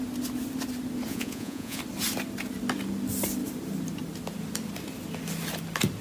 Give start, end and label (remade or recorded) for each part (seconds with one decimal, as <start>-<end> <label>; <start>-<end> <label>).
0.0-1.1 recorded; 1.1-1.8 remade; 1.8-6.0 recorded